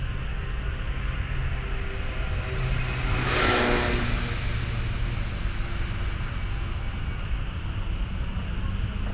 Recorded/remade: recorded